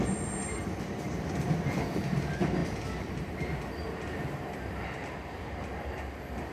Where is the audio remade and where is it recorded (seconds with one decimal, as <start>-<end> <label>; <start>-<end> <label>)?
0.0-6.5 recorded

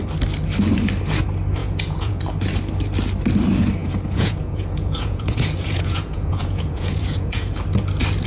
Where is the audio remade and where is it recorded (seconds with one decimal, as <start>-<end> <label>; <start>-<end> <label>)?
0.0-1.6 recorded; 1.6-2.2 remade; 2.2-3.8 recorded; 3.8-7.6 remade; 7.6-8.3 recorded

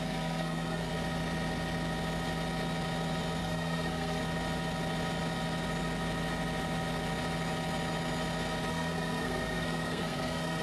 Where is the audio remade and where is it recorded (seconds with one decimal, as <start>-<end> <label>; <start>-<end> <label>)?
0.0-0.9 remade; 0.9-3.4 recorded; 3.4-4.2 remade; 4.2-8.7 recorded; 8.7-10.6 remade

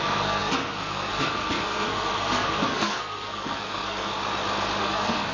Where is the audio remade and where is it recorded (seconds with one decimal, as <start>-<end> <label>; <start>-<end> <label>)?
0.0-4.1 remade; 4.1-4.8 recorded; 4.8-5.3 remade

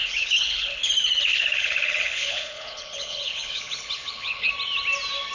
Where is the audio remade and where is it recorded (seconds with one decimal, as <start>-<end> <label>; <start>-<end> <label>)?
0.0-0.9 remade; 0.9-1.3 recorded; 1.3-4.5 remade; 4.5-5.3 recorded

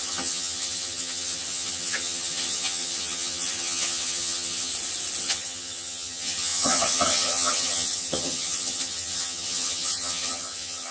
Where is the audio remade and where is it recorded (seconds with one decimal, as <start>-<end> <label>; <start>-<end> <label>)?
0.0-4.7 remade; 4.7-5.2 recorded; 5.2-10.9 remade

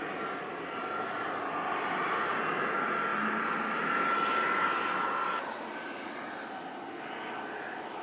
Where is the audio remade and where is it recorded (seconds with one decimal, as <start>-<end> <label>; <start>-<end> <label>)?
0.0-8.0 recorded

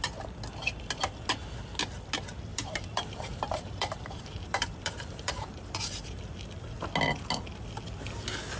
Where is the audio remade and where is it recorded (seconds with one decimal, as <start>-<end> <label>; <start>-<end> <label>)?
0.0-2.5 recorded; 2.5-6.3 remade; 6.3-8.6 recorded